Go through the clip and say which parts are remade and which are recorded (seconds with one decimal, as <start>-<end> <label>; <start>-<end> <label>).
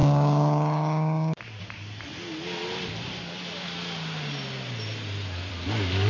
0.0-1.4 remade; 1.4-6.1 recorded